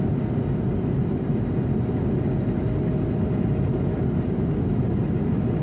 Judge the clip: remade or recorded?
recorded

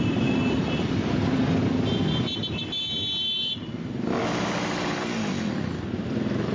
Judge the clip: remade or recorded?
remade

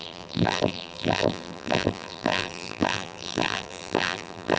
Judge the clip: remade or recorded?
remade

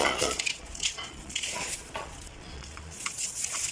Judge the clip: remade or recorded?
remade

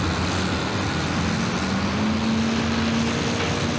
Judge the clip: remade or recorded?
recorded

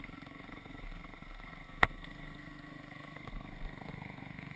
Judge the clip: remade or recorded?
remade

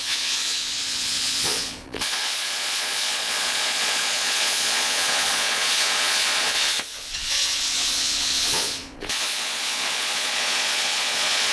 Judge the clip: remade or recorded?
remade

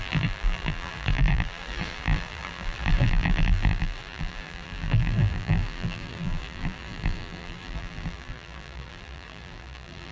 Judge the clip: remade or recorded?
remade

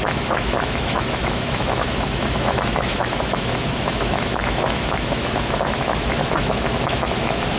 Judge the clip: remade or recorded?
remade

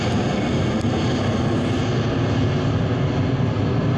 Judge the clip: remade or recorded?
recorded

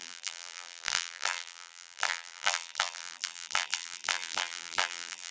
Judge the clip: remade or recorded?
remade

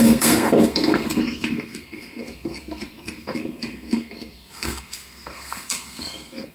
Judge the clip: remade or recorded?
remade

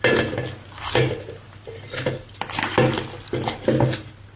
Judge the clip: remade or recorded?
recorded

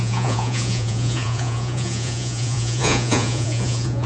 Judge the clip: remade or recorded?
remade